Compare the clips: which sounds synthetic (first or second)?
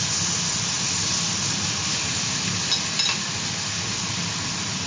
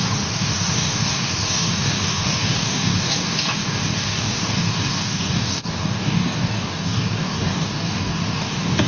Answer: second